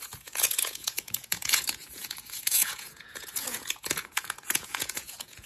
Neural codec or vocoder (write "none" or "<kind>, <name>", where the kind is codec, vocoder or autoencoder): vocoder, Vocos